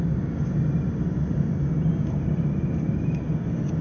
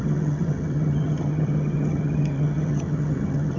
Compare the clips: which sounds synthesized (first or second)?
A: second